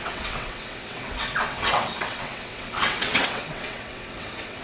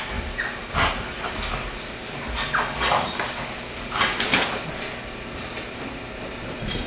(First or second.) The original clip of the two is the second